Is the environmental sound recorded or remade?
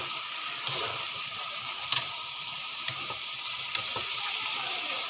remade